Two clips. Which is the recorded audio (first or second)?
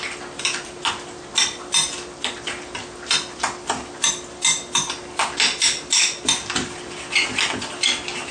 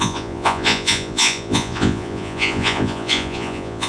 first